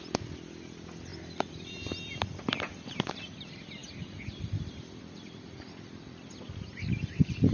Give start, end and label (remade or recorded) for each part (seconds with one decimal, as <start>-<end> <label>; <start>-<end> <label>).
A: 0.0-1.1 recorded; 1.1-3.2 remade; 3.2-3.8 recorded; 3.8-6.3 remade; 6.3-7.5 recorded